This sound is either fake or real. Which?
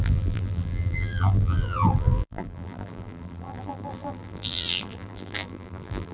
fake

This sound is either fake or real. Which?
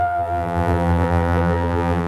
fake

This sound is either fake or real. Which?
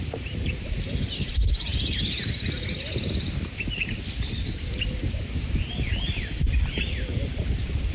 fake